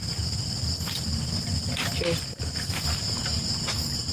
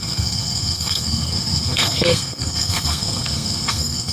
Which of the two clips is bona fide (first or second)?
first